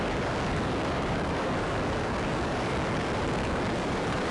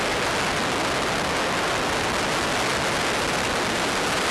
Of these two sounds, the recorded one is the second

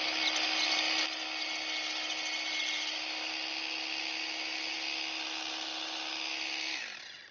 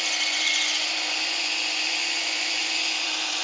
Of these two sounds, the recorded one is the first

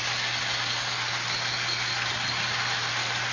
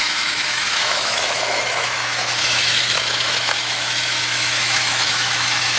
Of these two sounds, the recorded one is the first